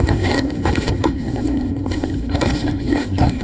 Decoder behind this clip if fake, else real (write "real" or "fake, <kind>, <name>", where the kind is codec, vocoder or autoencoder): fake, codec, SNAC